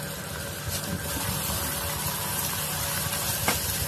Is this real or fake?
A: real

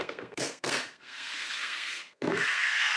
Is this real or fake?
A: fake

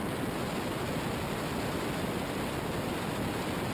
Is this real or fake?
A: real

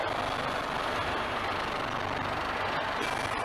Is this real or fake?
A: real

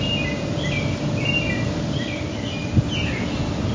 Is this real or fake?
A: real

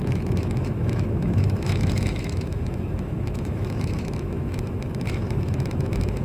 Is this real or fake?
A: fake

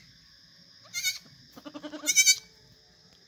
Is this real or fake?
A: real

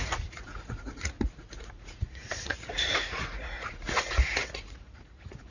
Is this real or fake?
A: fake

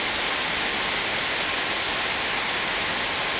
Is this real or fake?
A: real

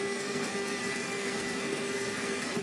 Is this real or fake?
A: fake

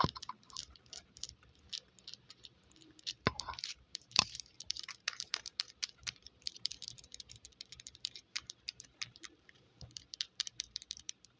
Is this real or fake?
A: fake